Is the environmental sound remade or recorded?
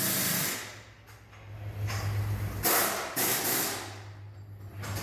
recorded